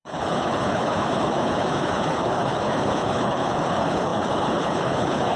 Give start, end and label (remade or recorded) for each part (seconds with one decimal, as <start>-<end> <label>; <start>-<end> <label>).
0.0-5.4 remade